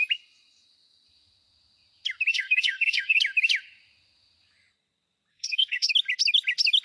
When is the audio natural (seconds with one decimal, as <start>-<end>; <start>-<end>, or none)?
0.0-2.3; 3.2-5.3; 5.9-6.8